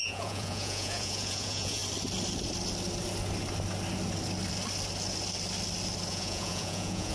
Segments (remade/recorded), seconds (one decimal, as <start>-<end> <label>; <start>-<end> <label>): 0.0-1.8 remade; 1.8-6.1 recorded; 6.1-7.1 remade